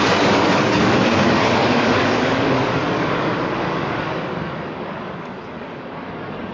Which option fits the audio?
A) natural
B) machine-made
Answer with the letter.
B